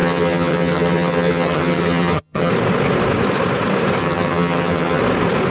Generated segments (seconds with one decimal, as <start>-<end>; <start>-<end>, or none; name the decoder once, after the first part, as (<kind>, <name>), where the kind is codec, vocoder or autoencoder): 0.0-2.5 (vocoder, HiFi-GAN); 4.0-5.0